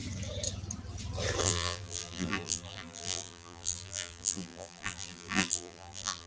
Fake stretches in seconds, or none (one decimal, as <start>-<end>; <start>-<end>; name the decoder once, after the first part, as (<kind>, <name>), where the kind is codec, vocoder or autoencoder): 1.4-6.3 (vocoder, BigVGAN v2)